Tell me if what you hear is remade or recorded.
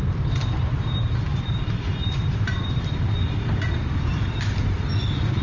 remade